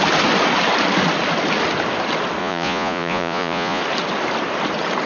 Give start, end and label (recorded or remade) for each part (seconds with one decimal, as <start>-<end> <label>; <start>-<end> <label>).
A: 0.0-2.4 recorded; 2.4-3.8 remade; 3.8-5.1 recorded